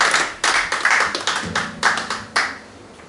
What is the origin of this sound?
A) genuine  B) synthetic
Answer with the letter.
A